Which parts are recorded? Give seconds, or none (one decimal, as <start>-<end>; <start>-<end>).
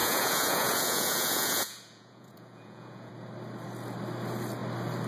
3.1-5.1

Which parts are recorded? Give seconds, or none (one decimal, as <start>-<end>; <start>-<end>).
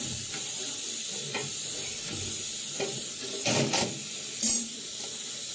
none